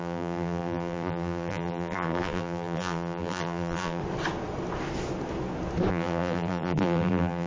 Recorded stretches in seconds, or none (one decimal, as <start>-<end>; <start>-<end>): 4.0-5.9